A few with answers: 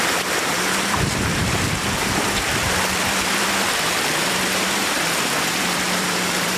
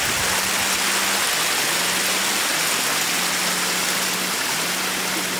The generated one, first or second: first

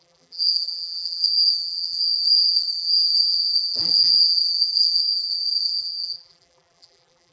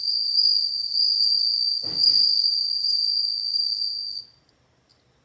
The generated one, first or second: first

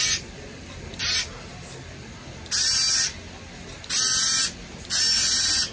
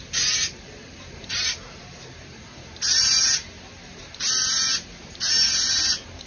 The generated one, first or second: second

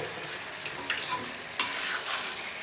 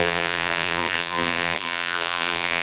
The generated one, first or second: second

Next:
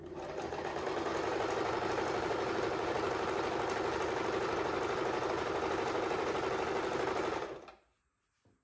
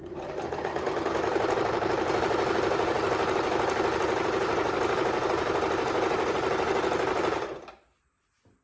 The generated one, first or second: second